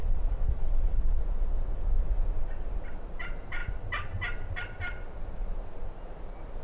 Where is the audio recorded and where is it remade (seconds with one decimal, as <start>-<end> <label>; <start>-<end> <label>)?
0.0-1.2 remade; 1.2-6.6 recorded